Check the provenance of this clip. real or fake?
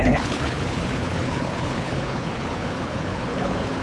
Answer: fake